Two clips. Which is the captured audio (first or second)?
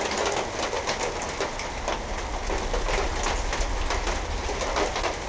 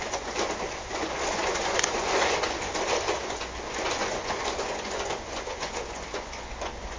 first